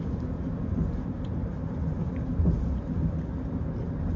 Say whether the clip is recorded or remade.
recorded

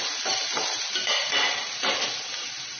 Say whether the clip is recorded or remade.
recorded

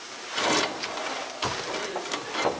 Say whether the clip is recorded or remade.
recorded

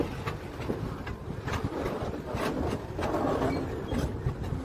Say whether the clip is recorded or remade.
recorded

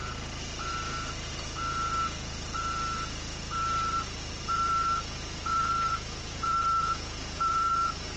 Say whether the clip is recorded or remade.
remade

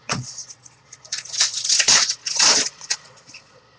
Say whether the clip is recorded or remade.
remade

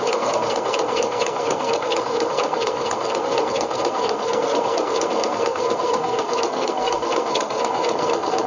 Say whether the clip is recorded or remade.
remade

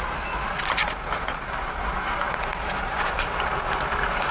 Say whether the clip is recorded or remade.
recorded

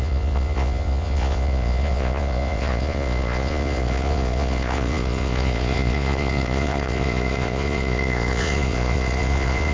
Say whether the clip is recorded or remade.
remade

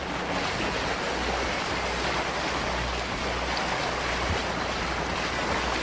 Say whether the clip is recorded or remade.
recorded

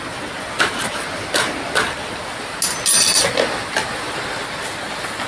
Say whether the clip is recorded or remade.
recorded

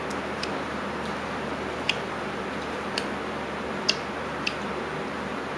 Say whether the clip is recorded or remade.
recorded